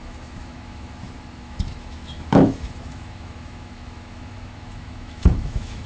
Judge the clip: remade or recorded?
remade